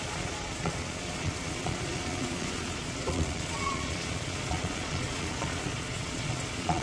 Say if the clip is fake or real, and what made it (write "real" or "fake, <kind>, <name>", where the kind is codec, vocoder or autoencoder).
fake, vocoder, Vocos